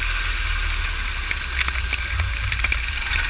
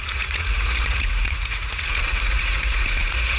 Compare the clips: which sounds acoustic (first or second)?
first